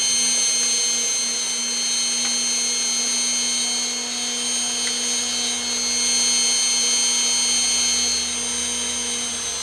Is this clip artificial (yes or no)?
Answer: no